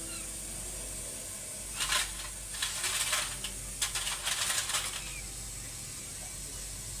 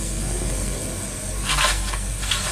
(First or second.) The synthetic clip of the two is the second